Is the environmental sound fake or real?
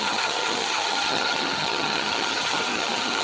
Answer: fake